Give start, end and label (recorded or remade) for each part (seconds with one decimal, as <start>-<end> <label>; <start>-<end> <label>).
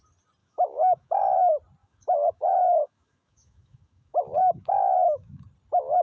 0.0-0.4 recorded; 0.4-1.2 remade; 1.2-1.8 recorded; 1.8-5.4 remade; 5.4-6.0 recorded